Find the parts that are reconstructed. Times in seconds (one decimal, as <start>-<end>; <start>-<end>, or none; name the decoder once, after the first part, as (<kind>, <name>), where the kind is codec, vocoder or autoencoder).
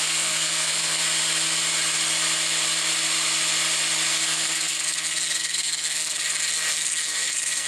0.0-1.0 (codec, SNAC); 4.1-6.2; 6.7-7.7